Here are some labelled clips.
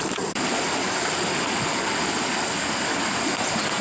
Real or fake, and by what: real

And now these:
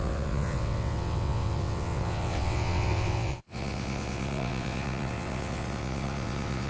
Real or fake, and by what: fake, vocoder, WaveNeXt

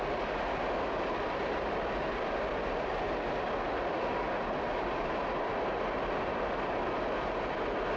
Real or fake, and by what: real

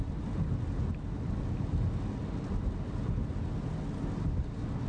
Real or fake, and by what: real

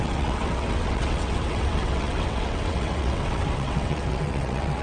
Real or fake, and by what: fake, vocoder, WaveNeXt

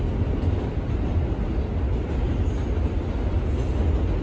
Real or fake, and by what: real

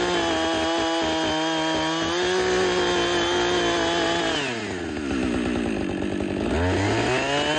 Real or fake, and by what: real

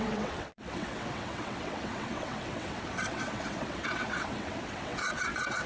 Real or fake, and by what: fake, vocoder, WaveNeXt